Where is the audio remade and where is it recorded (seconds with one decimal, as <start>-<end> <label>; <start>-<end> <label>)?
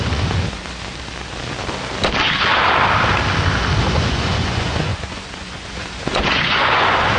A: 0.0-0.6 remade; 0.6-3.9 recorded; 3.9-7.2 remade